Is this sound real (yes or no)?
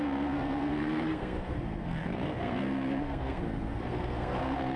no